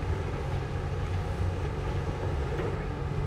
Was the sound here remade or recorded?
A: recorded